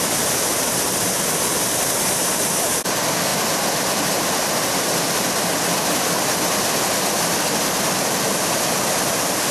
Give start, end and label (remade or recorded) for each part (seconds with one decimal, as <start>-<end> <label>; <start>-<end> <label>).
0.0-9.5 remade